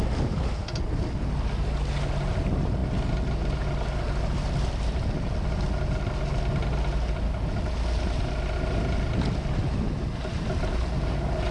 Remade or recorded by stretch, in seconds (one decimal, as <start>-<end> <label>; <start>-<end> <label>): 0.0-11.5 recorded